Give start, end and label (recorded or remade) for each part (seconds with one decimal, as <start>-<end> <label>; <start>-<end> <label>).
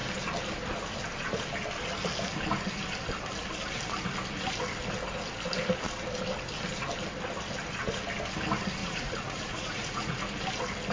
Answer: 0.0-8.8 recorded; 8.8-10.3 remade; 10.3-10.9 recorded